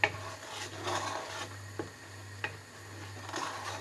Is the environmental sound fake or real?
real